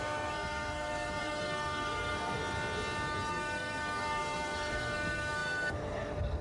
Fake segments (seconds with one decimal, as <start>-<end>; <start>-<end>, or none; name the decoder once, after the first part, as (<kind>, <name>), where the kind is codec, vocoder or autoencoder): 0.0-2.4 (codec, SNAC); 3.3-6.4